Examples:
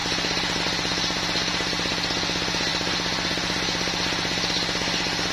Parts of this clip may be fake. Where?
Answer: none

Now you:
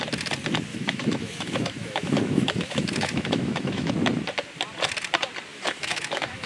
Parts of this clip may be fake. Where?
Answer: 0.7-3.9; 5.5-6.5

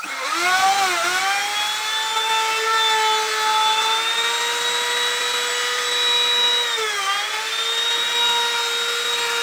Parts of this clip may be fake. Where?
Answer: none

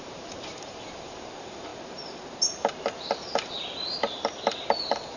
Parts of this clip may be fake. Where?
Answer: 0.0-1.7; 4.8-5.2

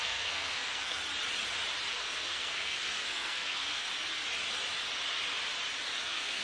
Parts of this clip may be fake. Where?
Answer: 0.0-1.0; 1.9-3.9; 6.0-6.4

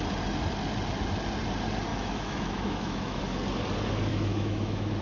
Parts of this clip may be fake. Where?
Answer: 1.9-3.2; 4.1-5.0

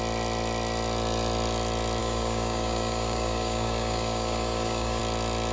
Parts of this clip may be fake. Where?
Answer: 2.0-5.0